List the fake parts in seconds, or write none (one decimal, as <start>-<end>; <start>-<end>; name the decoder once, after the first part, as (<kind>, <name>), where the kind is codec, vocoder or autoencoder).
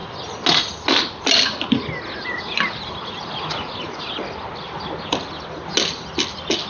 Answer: none